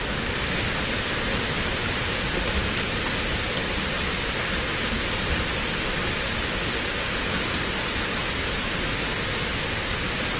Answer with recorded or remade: recorded